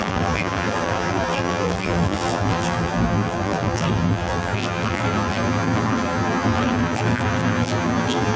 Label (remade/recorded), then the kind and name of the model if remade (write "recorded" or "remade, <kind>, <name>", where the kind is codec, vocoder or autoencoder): remade, vocoder, BigVGAN v2